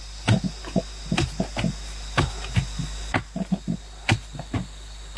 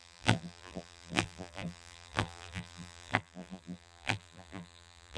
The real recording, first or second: first